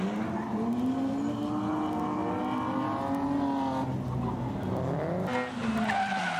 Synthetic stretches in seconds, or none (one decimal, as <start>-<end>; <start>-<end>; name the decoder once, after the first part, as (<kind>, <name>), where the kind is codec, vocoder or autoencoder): none